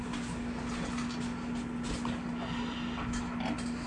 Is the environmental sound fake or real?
real